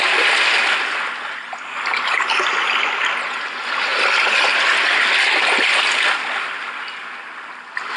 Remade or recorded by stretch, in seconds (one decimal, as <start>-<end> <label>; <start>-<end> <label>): 0.0-8.0 recorded